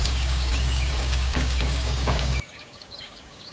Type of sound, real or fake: fake